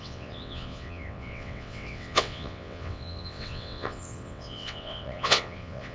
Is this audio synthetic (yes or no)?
yes